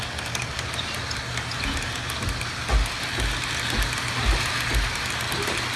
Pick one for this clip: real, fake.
real